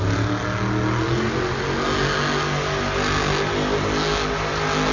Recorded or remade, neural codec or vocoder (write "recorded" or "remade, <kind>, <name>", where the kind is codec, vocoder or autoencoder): recorded